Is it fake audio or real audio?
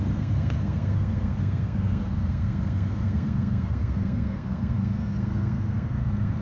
fake